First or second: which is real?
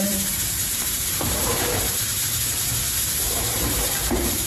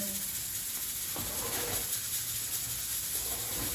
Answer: second